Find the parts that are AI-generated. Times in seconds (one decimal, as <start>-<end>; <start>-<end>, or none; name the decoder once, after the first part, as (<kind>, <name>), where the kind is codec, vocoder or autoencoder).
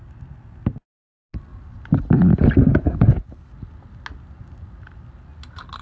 none